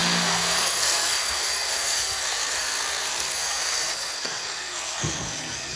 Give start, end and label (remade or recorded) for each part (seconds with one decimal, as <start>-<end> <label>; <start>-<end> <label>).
0.0-5.8 remade